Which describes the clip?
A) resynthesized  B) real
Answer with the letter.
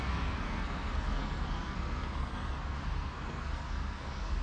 A